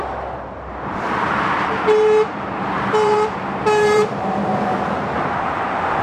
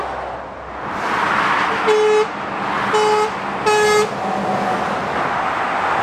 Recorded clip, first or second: second